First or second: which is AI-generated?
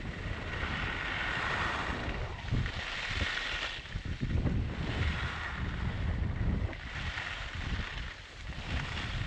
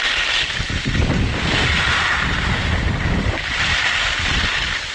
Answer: second